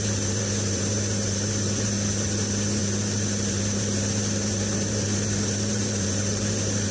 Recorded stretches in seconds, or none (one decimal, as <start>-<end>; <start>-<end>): none